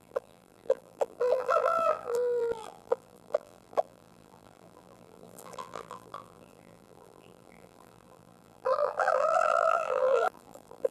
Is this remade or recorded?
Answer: remade